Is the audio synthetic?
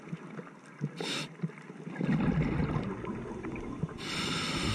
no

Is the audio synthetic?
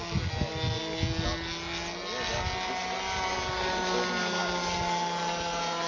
no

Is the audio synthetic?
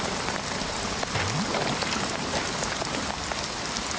no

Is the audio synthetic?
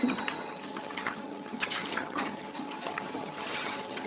yes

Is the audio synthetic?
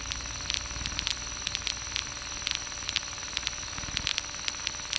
no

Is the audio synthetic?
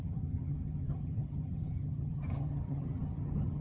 yes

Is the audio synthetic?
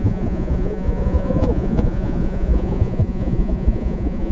yes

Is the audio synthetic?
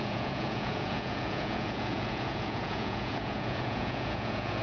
yes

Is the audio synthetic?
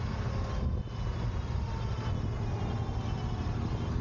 no